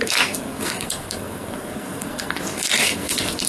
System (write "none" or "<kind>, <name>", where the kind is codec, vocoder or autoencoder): codec, SNAC